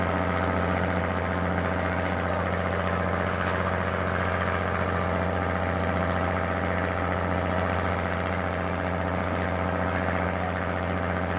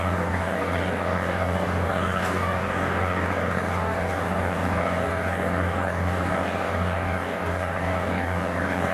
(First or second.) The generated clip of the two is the second